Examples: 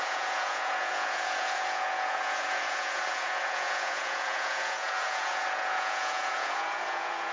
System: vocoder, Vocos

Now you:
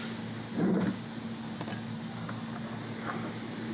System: none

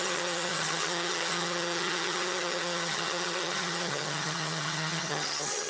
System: vocoder, HiFi-GAN